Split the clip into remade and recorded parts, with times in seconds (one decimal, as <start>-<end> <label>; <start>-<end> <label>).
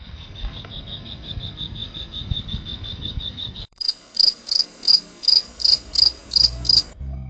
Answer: 0.0-7.3 remade